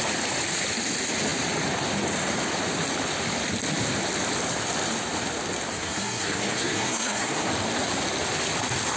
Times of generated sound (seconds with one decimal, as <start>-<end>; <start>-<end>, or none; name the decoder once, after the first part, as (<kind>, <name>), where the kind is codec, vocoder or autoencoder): 5.7-7.5 (codec, SNAC)